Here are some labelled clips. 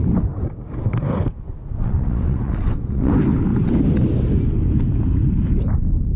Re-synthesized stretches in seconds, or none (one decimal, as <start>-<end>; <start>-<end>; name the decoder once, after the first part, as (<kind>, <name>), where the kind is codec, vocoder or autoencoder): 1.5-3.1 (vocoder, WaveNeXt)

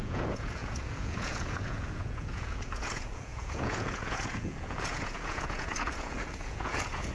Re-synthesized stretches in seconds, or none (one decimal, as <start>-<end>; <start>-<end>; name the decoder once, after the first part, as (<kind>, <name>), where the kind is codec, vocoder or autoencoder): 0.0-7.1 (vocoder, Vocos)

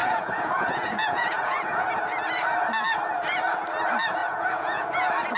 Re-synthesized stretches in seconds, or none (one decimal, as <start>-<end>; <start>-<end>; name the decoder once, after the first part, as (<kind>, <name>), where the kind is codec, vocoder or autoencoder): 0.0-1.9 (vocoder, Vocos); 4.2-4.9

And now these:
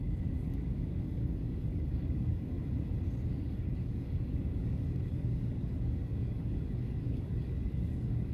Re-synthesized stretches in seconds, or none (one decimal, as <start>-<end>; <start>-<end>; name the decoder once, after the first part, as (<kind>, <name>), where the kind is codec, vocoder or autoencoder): 0.0-2.6 (codec, DAC); 3.4-8.3

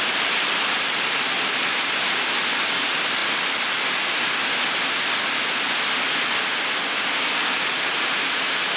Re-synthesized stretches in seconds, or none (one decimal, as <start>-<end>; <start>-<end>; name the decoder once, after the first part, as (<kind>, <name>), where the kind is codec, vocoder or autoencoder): none